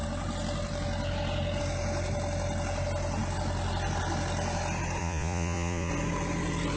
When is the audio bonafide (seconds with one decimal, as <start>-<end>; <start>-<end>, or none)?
0.0-5.0; 5.9-6.8